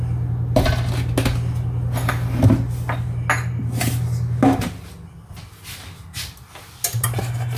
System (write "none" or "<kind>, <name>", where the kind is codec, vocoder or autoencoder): none